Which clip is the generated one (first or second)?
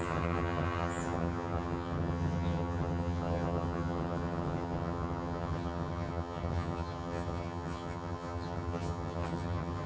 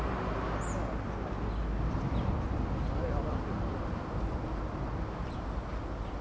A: first